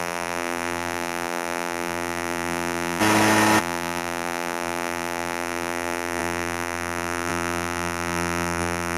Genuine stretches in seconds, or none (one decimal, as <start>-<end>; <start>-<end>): 3.0-3.6